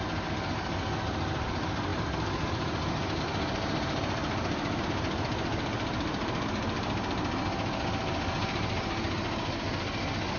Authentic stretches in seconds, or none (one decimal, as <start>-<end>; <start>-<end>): 0.0-10.4